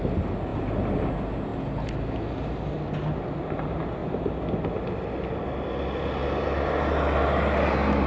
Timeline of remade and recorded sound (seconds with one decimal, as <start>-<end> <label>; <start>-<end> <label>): 0.0-8.1 recorded